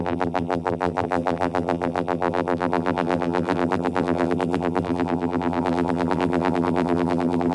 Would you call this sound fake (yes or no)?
yes